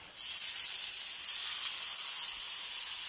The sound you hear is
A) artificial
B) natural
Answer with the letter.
B